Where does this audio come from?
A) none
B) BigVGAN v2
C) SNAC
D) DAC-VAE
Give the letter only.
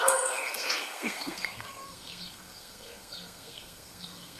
C